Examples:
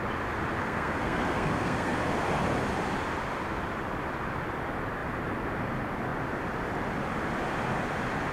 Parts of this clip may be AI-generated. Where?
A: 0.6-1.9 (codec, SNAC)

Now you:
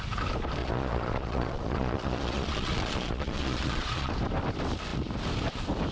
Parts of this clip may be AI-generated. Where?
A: 0.6-4.1 (vocoder, Vocos)

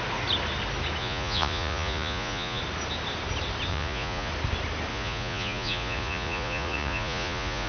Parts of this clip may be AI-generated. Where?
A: 1.0-2.6 (vocoder, Vocos); 3.7-4.3; 4.9-7.7

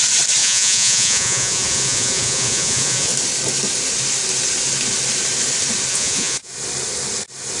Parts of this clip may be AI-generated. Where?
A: 0.4-3.1 (vocoder, Vocos); 5.9-6.5

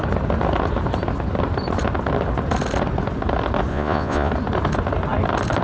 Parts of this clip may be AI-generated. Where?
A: 3.7-4.3 (vocoder, Vocos)

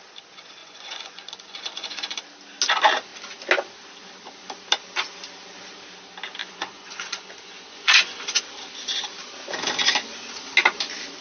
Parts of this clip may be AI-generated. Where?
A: 0.6-2.2 (vocoder, Vocos); 6.4-8.4